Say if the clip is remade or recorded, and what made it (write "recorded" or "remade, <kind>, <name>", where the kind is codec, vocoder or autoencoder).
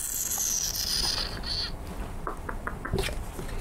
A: recorded